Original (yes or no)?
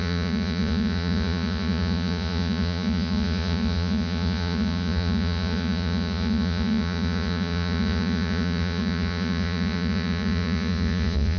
no